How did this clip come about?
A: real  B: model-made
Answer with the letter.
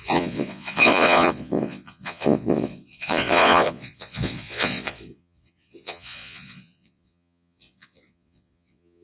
B